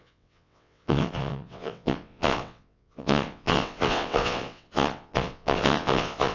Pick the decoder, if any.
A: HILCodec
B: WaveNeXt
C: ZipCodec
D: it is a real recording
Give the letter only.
B